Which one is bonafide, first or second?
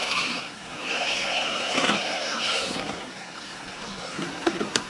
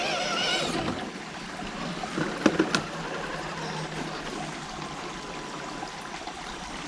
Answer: second